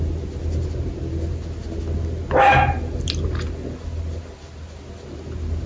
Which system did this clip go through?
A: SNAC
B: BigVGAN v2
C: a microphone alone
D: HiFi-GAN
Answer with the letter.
C